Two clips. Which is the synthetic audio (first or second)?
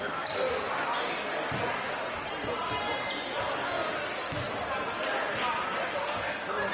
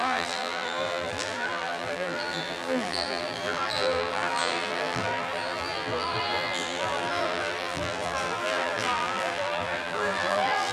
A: second